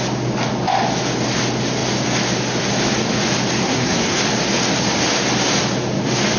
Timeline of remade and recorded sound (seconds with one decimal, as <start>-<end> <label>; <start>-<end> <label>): 0.0-3.6 recorded; 3.6-4.2 remade; 4.2-6.4 recorded